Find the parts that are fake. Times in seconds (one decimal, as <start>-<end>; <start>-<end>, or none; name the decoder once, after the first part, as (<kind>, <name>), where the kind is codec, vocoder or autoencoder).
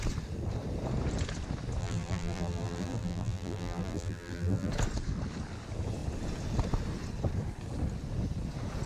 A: 1.8-4.7 (vocoder, BigVGAN v2)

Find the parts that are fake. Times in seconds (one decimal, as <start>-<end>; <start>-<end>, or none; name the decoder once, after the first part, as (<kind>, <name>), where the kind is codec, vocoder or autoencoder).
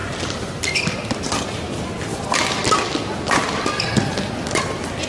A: none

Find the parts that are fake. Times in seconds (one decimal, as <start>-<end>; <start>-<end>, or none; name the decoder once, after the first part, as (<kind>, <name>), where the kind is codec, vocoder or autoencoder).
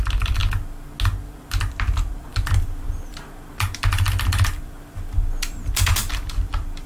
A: 0.0-0.4 (vocoder, BigVGAN v2); 1.5-6.9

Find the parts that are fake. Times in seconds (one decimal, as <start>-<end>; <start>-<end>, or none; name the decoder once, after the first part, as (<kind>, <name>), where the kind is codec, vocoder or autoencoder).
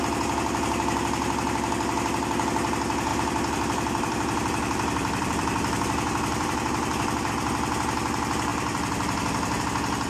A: 3.1-7.3 (vocoder, BigVGAN v2); 8.5-9.6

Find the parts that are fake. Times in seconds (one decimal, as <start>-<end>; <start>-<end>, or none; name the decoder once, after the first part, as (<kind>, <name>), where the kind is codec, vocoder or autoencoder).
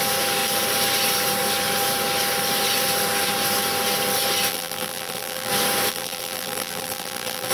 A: 4.5-5.5 (vocoder, BigVGAN v2); 5.9-7.5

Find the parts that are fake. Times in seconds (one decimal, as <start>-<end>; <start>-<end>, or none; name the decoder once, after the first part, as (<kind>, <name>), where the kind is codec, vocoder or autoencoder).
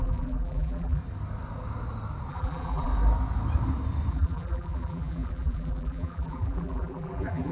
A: 0.0-1.0 (vocoder, BigVGAN v2); 2.3-2.9; 4.1-7.5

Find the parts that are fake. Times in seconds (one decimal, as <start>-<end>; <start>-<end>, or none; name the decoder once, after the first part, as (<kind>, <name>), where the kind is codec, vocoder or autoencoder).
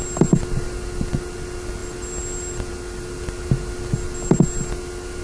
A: none